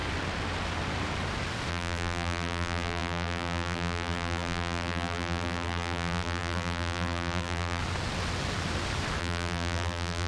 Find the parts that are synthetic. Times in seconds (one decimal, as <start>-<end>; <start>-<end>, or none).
1.7-7.8; 9.2-10.3